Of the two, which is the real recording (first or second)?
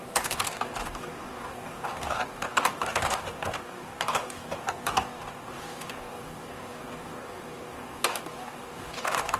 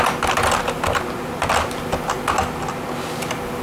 second